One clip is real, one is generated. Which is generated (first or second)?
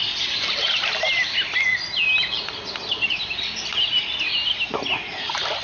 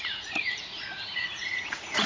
second